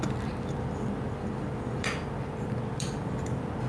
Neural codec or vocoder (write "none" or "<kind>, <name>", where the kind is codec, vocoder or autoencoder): none